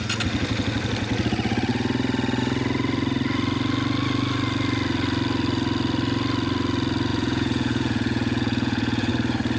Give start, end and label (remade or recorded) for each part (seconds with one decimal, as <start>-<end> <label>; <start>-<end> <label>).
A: 0.0-7.1 recorded; 7.1-9.1 remade; 9.1-9.6 recorded